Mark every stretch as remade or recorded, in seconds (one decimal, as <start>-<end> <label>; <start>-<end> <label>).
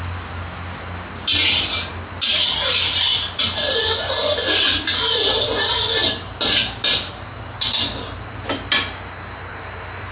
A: 0.0-10.1 recorded